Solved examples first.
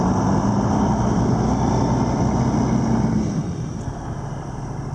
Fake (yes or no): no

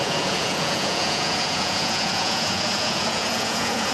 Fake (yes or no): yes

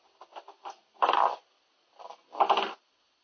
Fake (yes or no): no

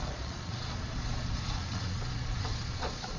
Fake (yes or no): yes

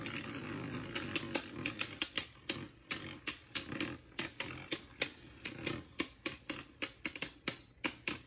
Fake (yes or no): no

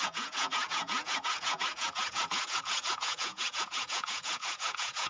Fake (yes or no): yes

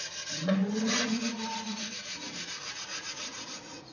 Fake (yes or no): yes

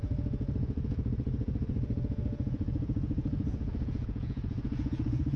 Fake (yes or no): yes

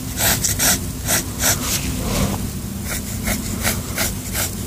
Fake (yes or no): no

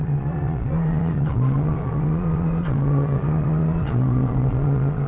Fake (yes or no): yes